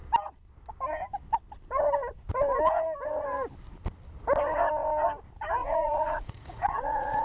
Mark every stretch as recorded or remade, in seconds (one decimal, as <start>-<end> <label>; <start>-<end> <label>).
0.0-5.6 recorded; 5.6-7.2 remade